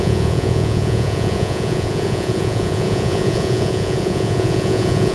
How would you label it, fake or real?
fake